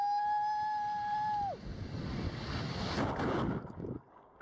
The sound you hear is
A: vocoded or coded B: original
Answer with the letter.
B